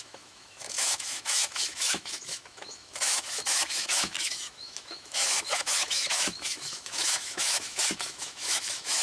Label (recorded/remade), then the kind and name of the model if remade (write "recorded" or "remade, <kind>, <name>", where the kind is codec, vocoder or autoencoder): remade, autoencoder, DAC-VAE